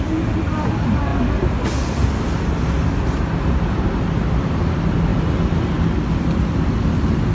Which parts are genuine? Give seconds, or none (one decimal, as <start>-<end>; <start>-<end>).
0.0-7.3